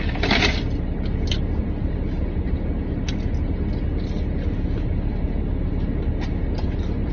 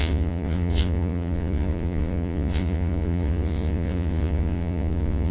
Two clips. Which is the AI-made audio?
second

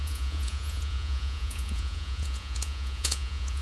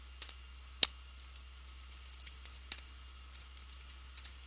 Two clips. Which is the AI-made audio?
first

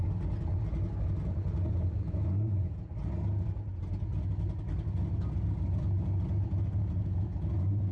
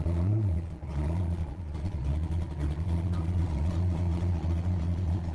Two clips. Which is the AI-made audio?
second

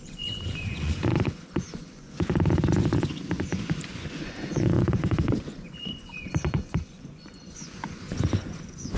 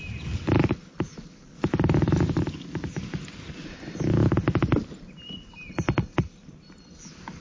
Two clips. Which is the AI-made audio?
first